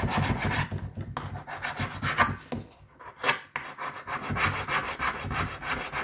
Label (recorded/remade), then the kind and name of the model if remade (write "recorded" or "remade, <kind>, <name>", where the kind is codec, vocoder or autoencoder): recorded